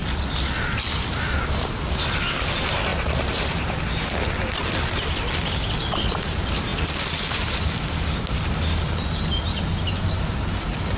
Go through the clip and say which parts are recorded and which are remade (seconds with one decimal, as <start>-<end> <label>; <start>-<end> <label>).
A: 0.0-2.9 recorded; 2.9-3.8 remade; 3.8-11.0 recorded